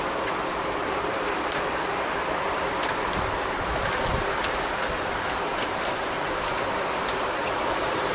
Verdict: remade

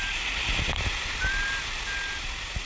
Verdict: recorded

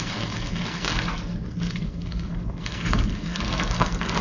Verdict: remade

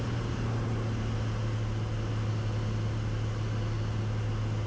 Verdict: recorded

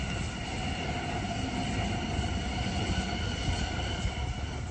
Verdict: recorded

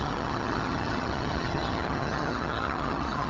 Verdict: remade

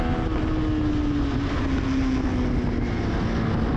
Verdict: recorded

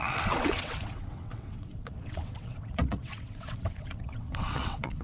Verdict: remade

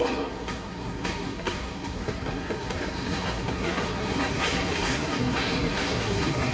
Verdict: remade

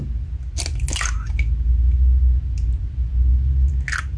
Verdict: recorded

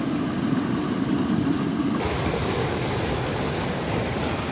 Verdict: recorded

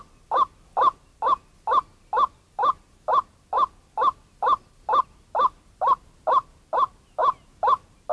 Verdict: recorded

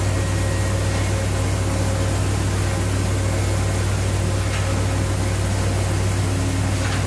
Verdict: recorded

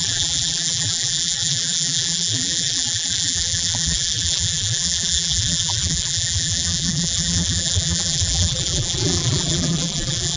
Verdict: remade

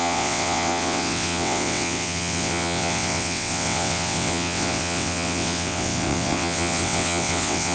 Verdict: remade